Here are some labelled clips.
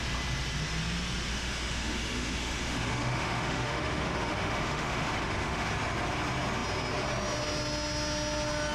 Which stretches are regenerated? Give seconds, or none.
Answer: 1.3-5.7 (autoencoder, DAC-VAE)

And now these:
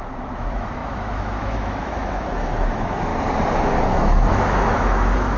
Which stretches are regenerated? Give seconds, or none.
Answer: 0.0-3.1 (autoencoder, DAC-VAE); 3.8-5.4

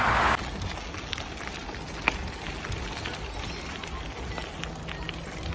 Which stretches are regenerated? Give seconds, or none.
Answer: none

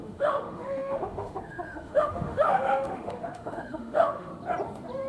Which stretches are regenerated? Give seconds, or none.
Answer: 0.0-4.3 (autoencoder, DAC-VAE)

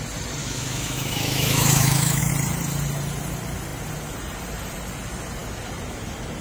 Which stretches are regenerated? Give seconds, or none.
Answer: 0.4-2.3 (autoencoder, DAC-VAE)

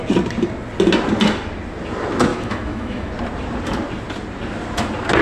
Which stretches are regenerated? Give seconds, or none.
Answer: 2.3-3.1 (autoencoder, DAC-VAE)